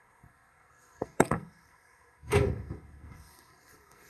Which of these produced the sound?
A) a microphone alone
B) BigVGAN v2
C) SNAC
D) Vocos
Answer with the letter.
C